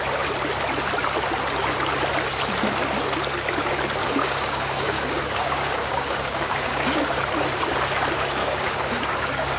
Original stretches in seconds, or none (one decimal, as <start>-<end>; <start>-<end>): 0.0-4.0; 7.2-8.4